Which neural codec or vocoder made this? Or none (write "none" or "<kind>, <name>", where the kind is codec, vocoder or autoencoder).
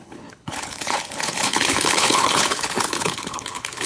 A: codec, HILCodec